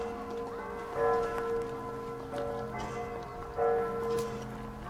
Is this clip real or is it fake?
real